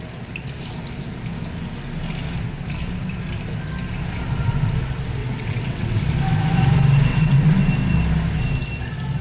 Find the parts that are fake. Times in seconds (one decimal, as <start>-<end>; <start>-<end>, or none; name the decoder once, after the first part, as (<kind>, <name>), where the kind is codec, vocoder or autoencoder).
5.2-6.0 (vocoder, WaveNeXt); 7.1-7.6